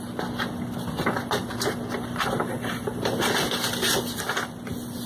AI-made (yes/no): no